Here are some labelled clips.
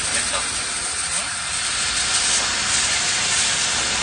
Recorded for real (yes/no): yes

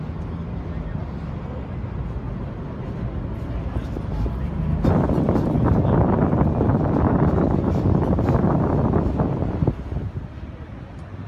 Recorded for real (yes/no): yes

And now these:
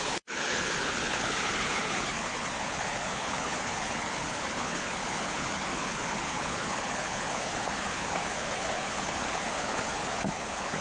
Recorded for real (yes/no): no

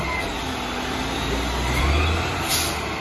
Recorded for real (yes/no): yes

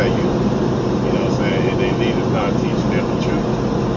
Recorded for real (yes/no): yes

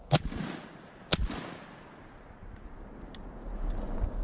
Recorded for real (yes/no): yes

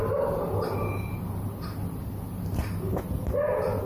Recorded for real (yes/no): yes